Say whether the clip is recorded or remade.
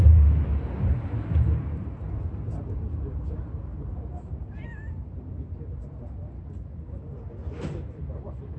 remade